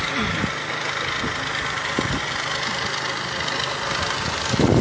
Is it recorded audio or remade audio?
recorded